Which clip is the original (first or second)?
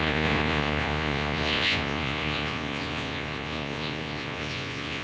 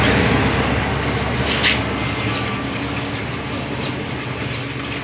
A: second